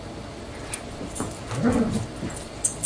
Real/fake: real